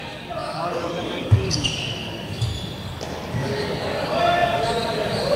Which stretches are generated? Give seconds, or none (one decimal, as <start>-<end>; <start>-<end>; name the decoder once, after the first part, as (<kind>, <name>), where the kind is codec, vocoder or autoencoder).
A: 0.0-2.5 (codec, DAC); 3.3-5.4